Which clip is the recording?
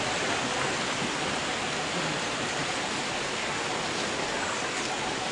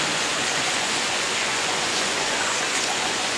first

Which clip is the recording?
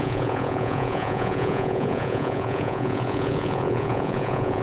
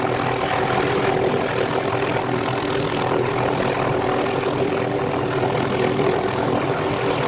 second